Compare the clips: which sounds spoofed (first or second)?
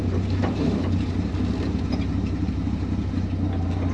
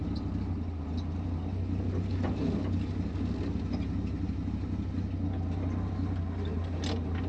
first